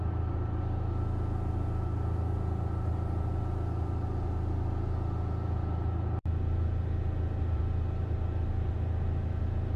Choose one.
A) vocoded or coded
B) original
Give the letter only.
B